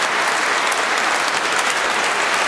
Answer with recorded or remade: recorded